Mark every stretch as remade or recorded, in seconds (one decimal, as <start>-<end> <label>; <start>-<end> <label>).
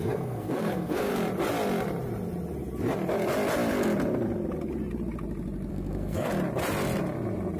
0.0-1.1 remade; 1.1-5.7 recorded; 5.7-6.3 remade; 6.3-7.6 recorded